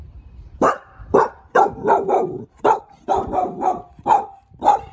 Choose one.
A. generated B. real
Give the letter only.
A